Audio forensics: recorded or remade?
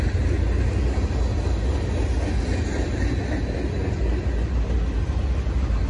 recorded